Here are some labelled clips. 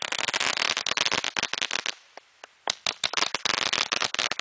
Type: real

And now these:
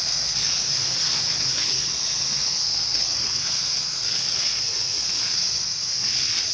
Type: fake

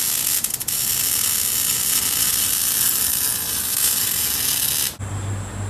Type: real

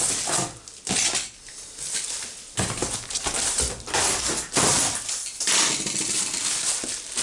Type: real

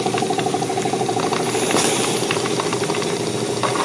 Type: real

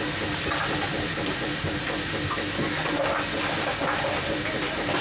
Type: real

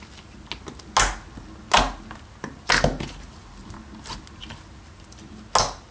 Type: real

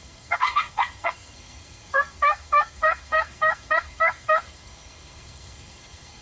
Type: fake